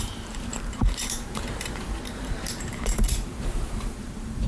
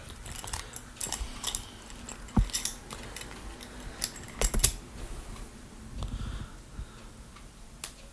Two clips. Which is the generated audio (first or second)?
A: first